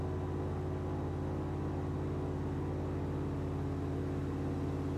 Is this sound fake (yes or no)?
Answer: no